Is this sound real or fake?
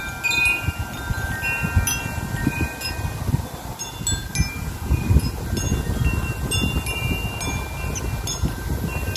real